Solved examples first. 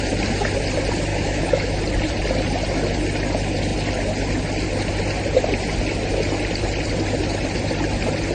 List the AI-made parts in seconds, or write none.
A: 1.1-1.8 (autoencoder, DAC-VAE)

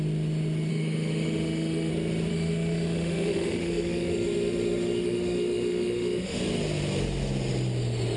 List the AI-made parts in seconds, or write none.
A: 0.7-1.9 (autoencoder, DAC-VAE); 2.3-6.4

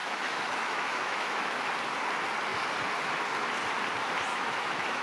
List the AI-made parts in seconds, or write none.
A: 0.0-1.6 (autoencoder, DAC-VAE); 4.3-5.0